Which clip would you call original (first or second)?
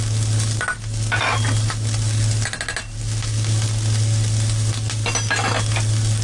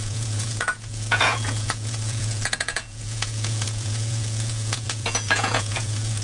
first